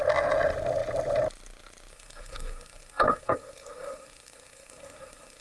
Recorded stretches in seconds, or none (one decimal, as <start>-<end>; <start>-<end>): 0.0-1.9